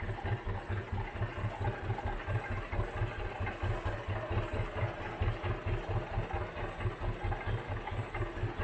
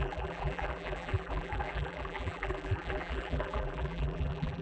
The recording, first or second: first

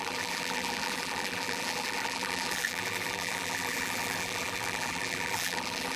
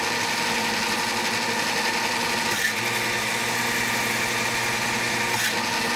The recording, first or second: second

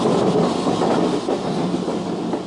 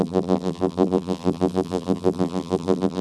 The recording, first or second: first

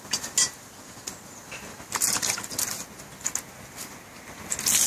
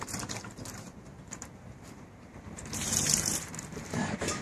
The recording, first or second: first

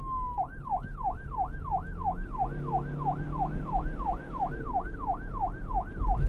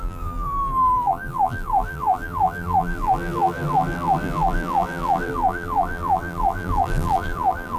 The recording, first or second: first